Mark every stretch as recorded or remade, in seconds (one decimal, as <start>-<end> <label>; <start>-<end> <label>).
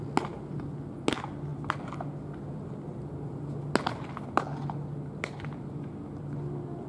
0.0-6.9 recorded